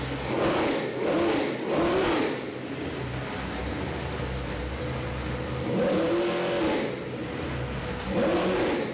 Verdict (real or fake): real